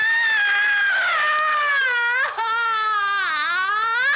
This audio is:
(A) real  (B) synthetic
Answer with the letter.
A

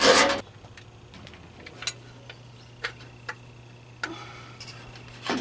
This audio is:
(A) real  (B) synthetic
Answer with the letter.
A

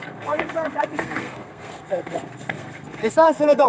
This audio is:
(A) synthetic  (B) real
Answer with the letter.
A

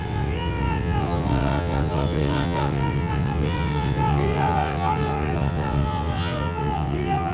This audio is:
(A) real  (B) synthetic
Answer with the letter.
B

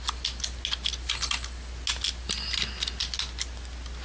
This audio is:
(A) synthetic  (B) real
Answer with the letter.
B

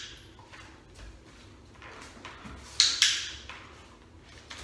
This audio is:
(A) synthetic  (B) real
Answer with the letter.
B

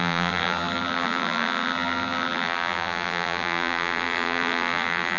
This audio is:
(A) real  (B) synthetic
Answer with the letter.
B